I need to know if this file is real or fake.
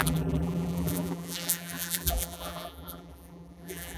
fake